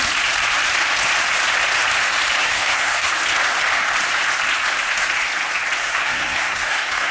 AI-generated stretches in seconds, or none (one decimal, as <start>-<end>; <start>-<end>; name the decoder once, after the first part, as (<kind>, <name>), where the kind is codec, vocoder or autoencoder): 2.4-3.1 (codec, SNAC); 5.8-7.1